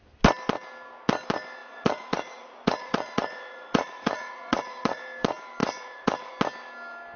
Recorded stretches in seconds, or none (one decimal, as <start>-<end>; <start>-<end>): 0.0-1.6; 5.0-5.6; 6.3-7.2